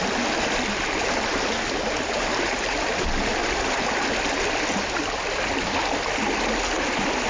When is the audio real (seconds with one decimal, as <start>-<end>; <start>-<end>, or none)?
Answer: 0.0-7.3